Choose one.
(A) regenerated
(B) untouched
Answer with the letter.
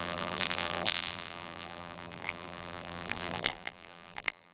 A